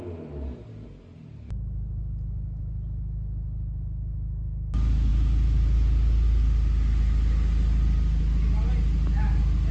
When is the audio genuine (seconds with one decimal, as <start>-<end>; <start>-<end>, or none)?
0.0-9.7